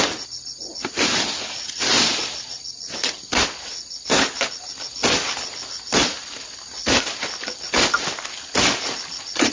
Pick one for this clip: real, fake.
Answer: real